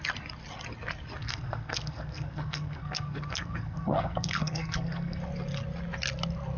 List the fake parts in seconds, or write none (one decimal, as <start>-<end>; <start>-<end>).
1.2-5.2